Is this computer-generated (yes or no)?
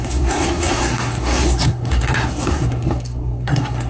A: yes